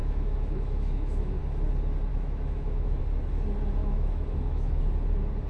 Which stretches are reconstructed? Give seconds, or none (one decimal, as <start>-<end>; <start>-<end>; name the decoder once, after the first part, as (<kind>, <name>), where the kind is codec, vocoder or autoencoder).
0.0-1.4 (autoencoder, DAC-VAE); 2.1-3.0; 3.8-4.8